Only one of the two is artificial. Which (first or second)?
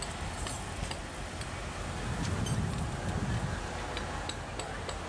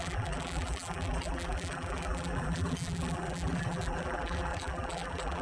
second